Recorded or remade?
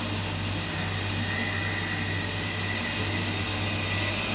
recorded